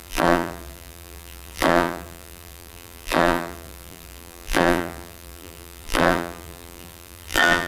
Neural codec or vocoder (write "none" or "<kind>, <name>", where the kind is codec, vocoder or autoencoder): vocoder, BigVGAN v2